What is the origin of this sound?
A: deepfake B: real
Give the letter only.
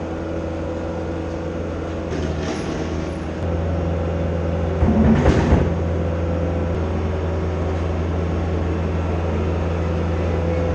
B